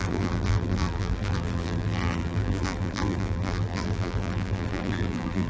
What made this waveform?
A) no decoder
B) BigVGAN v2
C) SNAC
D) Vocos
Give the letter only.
B